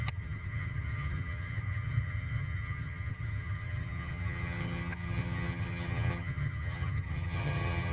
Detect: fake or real fake